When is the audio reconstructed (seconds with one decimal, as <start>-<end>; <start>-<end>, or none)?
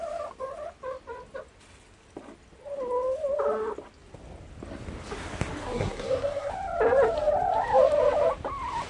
5.6-6.5